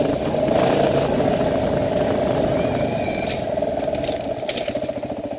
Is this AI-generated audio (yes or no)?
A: no